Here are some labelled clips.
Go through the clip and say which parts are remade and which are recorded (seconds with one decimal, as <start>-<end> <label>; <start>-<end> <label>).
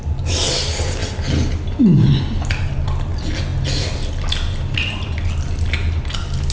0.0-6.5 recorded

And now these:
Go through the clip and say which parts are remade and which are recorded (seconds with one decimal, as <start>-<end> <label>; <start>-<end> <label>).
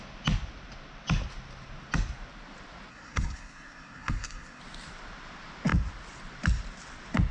0.0-2.9 recorded; 2.9-4.6 remade; 4.6-7.3 recorded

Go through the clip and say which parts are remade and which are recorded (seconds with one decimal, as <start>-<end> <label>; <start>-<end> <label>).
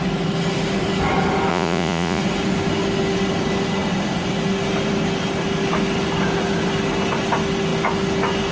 0.0-1.5 recorded; 1.5-2.2 remade; 2.2-8.5 recorded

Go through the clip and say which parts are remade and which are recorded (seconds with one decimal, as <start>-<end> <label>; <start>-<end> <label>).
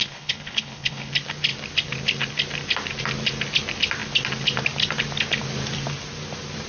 0.0-1.1 remade; 1.1-6.7 recorded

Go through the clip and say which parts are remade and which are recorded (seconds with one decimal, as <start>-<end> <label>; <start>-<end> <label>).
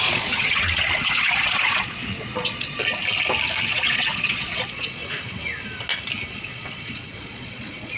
0.0-2.8 remade; 2.8-3.7 recorded; 3.7-5.0 remade; 5.0-6.3 recorded; 6.3-8.0 remade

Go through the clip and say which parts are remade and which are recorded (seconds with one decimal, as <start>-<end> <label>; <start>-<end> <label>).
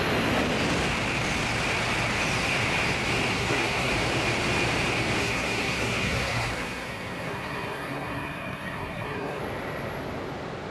0.0-3.3 recorded; 3.3-3.9 remade; 3.9-5.2 recorded; 5.2-9.4 remade; 9.4-10.7 recorded